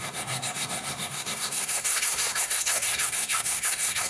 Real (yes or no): no